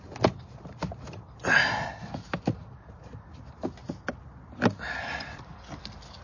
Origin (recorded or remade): recorded